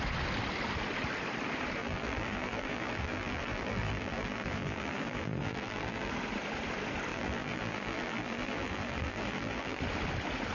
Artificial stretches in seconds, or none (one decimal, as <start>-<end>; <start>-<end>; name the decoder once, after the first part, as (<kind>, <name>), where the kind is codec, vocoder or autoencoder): 1.8-6.1 (vocoder, BigVGAN v2); 7.1-9.8